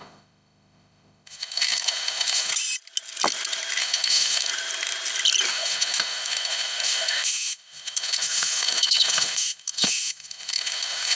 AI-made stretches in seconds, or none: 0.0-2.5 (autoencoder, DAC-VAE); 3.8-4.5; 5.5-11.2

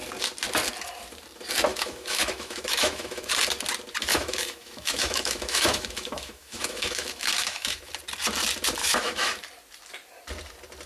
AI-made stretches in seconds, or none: 1.7-3.3 (autoencoder, DAC-VAE); 4.1-7.9; 8.8-9.4